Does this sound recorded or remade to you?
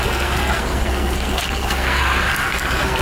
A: remade